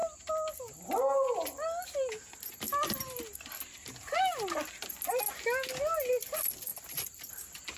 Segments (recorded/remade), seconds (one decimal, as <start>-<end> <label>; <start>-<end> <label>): 0.0-7.8 recorded